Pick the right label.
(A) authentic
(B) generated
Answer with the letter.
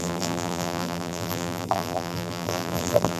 B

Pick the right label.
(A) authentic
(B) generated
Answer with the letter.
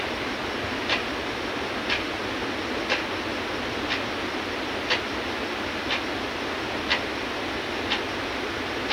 A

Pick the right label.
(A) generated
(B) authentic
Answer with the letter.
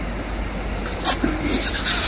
B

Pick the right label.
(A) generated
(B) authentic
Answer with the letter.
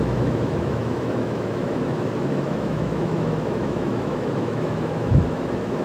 A